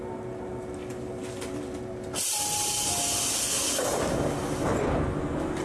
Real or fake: real